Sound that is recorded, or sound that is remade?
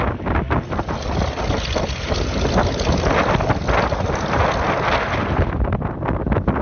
recorded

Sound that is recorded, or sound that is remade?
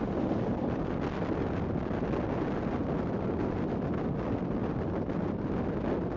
recorded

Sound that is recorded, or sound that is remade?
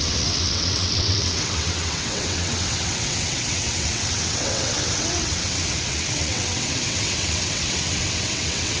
remade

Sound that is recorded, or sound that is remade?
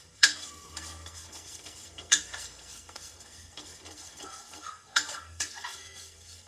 remade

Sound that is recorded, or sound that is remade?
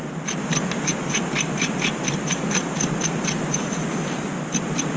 recorded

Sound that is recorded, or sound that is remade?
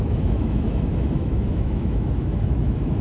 remade